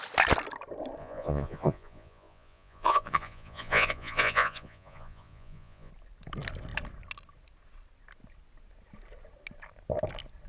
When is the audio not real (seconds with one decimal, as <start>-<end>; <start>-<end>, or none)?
1.0-5.9